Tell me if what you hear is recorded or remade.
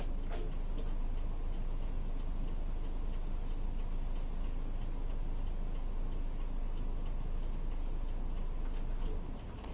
recorded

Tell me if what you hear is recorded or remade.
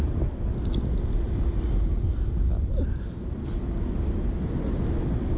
recorded